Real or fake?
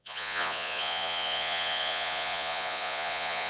fake